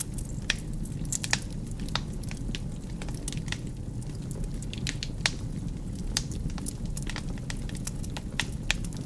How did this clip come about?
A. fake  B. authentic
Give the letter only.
B